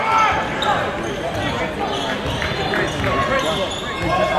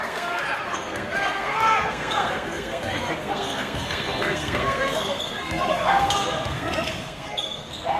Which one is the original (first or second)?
first